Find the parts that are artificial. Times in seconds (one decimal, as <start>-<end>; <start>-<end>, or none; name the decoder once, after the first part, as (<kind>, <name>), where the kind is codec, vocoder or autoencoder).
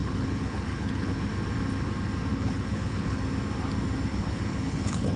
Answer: 0.0-1.3 (codec, HILCodec); 2.3-3.2; 4.1-5.2